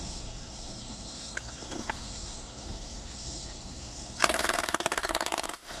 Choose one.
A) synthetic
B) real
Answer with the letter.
A